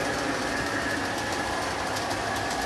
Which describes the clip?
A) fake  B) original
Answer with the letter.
B